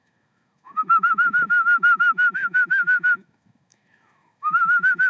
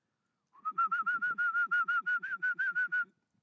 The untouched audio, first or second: second